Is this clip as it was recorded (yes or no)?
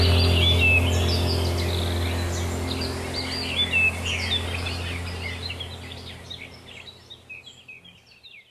yes